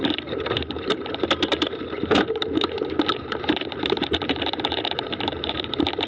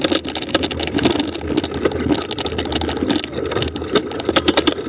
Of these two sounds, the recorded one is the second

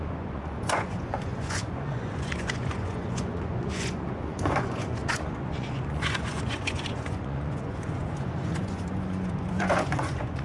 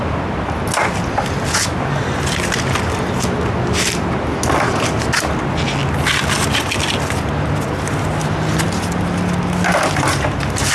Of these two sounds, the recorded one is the second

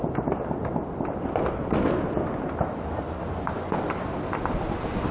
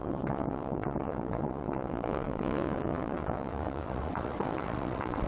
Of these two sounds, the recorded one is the first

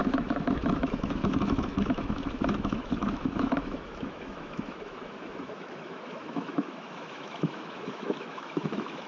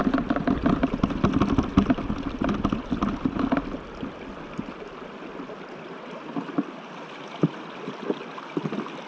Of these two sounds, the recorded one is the second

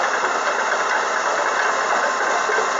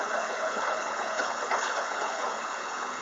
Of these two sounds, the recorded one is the first